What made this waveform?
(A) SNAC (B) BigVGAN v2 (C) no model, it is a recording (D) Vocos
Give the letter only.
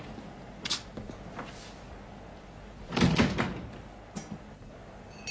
C